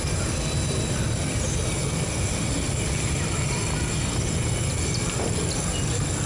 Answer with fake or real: fake